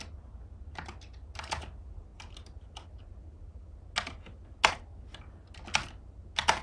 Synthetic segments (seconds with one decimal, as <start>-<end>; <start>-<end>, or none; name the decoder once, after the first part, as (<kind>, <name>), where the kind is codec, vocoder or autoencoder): none